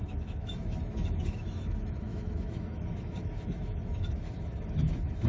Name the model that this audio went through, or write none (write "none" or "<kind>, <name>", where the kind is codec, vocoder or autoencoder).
autoencoder, DAC-VAE